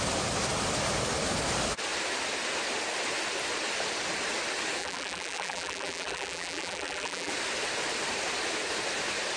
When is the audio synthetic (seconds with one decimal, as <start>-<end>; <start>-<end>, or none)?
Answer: 4.8-7.3